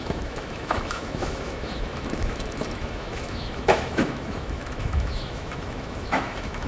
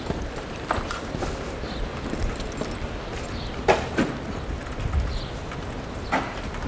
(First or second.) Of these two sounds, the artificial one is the first